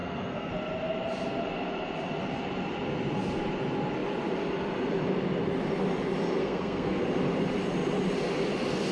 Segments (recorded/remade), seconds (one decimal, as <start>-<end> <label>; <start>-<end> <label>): 0.0-0.5 remade; 0.5-6.4 recorded; 6.4-7.0 remade; 7.0-8.9 recorded